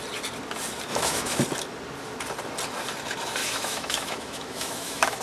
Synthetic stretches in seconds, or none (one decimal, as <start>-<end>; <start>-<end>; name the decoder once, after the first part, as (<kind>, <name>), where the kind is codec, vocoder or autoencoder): 0.9-1.4 (autoencoder, DAC-VAE); 3.4-5.2